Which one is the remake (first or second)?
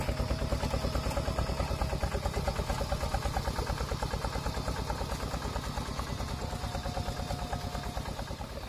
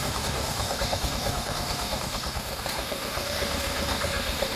second